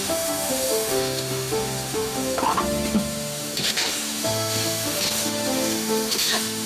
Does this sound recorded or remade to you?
remade